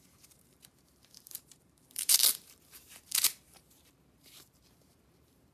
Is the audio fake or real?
fake